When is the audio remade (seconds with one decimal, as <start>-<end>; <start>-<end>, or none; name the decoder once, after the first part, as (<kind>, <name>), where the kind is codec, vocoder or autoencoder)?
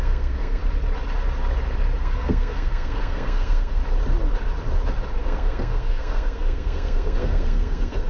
0.0-0.6 (codec, SNAC); 2.0-3.8; 5.2-8.1